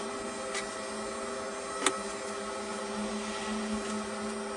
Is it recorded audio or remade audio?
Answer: recorded